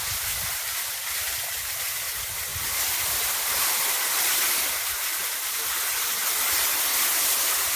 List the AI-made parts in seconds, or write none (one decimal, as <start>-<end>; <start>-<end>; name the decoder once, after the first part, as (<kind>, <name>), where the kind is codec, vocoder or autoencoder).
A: none